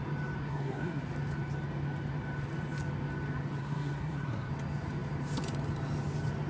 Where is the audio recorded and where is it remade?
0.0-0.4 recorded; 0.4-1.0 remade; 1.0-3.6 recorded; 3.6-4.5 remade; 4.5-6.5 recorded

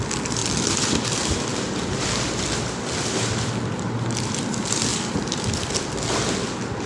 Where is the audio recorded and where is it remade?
0.0-0.4 recorded; 0.4-4.5 remade; 4.5-6.9 recorded

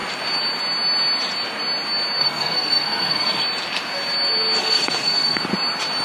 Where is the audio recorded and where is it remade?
0.0-2.2 recorded; 2.2-3.4 remade; 3.4-4.6 recorded; 4.6-5.4 remade; 5.4-6.0 recorded

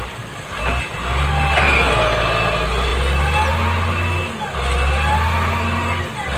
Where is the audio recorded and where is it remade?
0.0-6.4 recorded